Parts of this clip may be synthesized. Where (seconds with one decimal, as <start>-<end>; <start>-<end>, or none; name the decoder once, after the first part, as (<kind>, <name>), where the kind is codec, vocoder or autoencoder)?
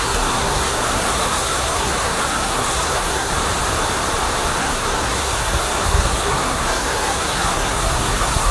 0.0-3.3 (codec, SNAC); 4.6-8.5